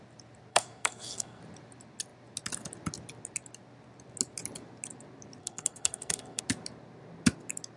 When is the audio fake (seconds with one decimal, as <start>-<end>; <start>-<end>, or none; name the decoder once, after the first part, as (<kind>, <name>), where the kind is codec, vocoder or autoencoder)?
0.5-1.4 (codec, SNAC); 5.4-6.4